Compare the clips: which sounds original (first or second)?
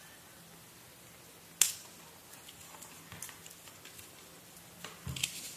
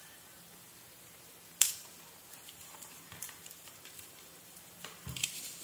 first